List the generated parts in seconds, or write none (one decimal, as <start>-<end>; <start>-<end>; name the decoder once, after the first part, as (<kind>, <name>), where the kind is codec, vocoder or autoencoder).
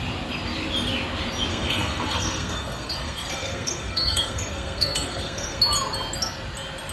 1.5-5.6 (codec, SNAC)